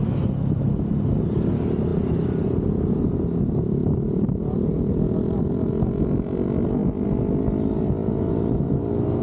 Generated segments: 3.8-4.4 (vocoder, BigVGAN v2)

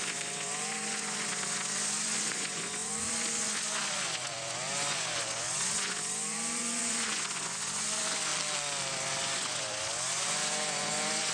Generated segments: 0.0-8.3 (vocoder, Vocos); 8.9-11.3

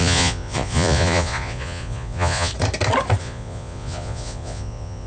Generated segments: 0.0-2.5 (vocoder, Vocos); 3.2-5.1

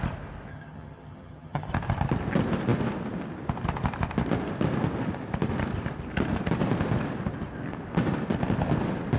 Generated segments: 0.5-1.7 (vocoder, HiFi-GAN)

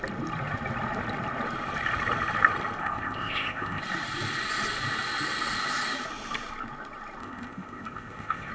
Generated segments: 2.8-3.8 (codec, ZipCodec); 7.2-8.5

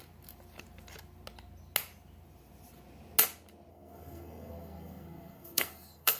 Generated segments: 3.7-6.2 (codec, SNAC)